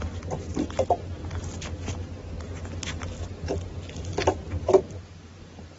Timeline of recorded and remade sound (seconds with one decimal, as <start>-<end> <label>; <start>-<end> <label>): 0.0-5.8 recorded

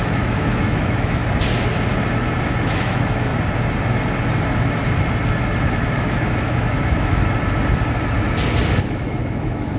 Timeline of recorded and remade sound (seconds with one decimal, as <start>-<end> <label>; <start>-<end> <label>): 0.0-1.2 remade; 1.2-2.4 recorded; 2.4-3.3 remade; 3.3-5.7 recorded; 5.7-7.2 remade; 7.2-8.8 recorded; 8.8-9.8 remade